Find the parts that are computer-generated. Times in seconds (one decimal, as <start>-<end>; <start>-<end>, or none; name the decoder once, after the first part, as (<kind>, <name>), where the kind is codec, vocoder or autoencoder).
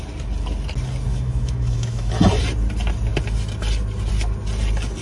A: 1.1-2.1 (autoencoder, DAC-VAE)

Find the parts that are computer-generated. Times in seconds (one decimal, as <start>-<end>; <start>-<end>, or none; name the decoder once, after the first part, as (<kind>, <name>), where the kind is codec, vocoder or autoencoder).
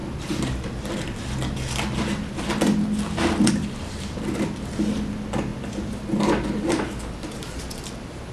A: none